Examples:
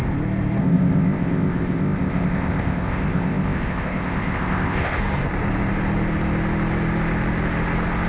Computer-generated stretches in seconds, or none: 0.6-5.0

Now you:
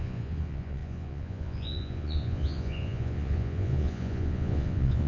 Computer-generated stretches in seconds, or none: 0.0-5.1

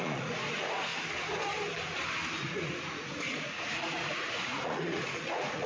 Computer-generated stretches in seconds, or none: 0.0-0.9; 2.4-5.7

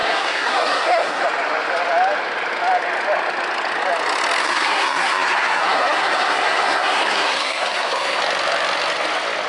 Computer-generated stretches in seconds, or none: 0.0-1.2; 4.4-8.2

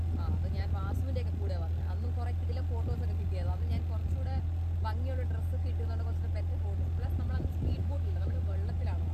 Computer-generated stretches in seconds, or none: 7.8-8.4

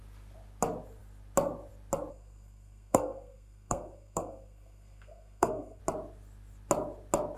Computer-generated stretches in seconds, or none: 2.1-5.8

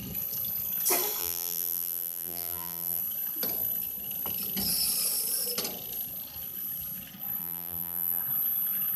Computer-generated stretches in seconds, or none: 1.2-3.0; 7.4-8.2